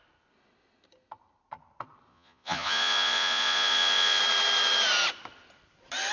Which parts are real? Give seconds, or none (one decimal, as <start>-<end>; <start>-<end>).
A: 0.0-2.1; 4.2-6.1